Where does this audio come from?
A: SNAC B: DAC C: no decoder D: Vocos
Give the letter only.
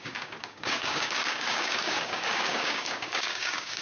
B